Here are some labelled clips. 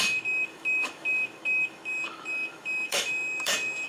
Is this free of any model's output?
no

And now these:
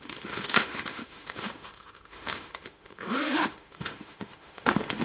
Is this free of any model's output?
no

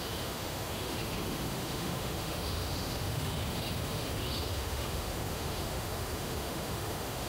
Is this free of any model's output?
no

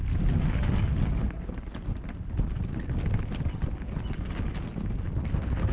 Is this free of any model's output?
yes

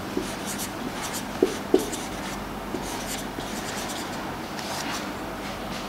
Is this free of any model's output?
yes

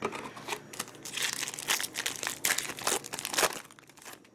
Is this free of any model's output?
yes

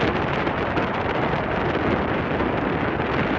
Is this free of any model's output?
yes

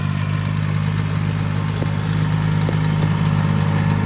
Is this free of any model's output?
yes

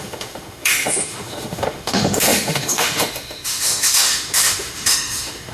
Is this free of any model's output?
no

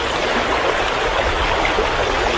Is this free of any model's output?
yes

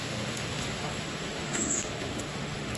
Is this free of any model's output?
no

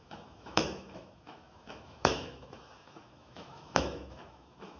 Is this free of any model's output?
no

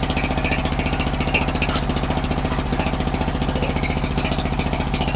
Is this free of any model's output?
yes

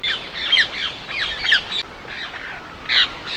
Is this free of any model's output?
yes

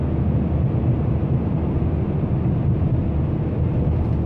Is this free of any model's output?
yes